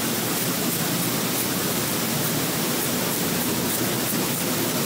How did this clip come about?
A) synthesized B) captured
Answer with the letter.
B